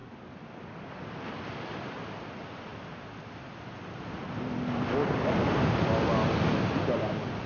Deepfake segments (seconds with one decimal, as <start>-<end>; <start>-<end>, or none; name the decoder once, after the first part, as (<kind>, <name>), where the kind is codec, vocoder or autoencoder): none